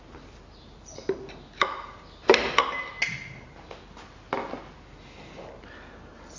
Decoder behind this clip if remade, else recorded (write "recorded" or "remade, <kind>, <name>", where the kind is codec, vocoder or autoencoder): recorded